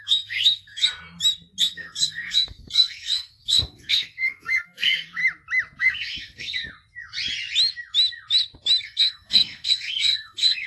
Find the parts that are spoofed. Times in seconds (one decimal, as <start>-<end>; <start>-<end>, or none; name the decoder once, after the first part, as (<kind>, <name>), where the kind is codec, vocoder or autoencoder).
0.0-0.9 (codec, SNAC); 1.6-5.2; 5.8-6.6; 8.8-10.7